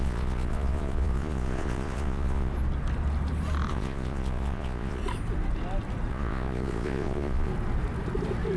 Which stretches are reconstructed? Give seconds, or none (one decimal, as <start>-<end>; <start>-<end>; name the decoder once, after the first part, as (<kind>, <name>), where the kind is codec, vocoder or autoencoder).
0.0-2.5 (vocoder, Vocos); 3.7-5.0; 6.1-7.5